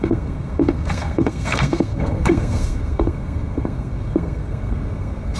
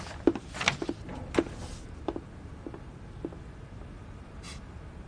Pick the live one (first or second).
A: second